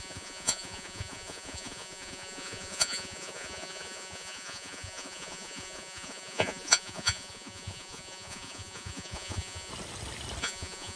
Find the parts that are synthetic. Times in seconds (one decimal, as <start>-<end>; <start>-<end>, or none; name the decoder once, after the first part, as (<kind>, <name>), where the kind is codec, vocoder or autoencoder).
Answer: 0.0-9.7 (vocoder, Vocos); 10.4-11.0